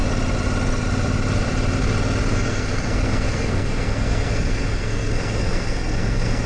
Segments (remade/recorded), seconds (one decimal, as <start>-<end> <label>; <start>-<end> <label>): 0.0-2.3 recorded; 2.3-6.5 remade